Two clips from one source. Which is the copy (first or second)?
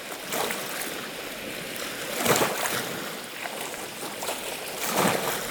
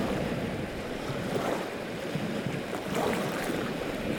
second